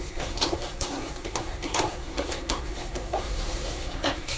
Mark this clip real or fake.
fake